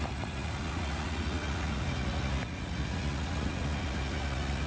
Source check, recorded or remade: remade